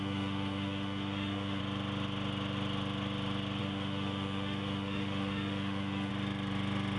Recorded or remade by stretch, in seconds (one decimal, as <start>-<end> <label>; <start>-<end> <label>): 0.0-1.6 remade; 1.6-3.6 recorded; 3.6-6.1 remade; 6.1-7.0 recorded